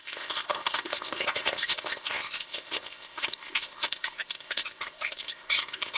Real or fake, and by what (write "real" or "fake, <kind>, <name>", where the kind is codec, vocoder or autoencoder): fake, codec, ZipCodec